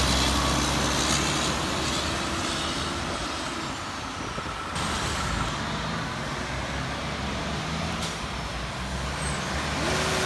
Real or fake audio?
real